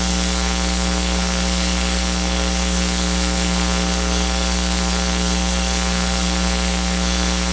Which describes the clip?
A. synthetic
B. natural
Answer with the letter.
A